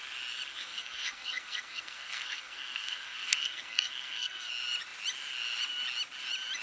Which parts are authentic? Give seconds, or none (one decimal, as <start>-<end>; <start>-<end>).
0.0-0.5; 4.5-6.6